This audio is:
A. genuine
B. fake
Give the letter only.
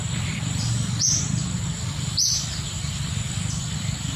A